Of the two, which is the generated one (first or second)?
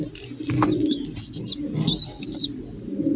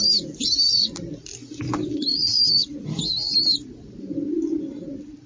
second